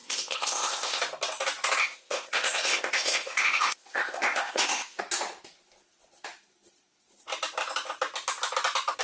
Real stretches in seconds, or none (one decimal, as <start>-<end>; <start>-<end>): 1.0-1.8; 5.0-9.0